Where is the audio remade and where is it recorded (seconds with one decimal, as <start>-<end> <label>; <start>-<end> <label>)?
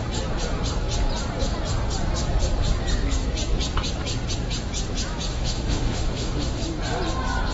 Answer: 0.0-5.3 recorded; 5.3-6.6 remade; 6.6-7.5 recorded